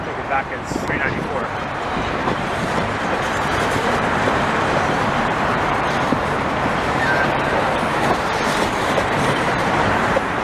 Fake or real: fake